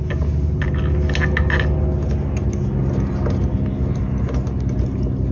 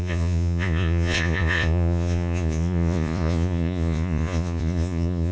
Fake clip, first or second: second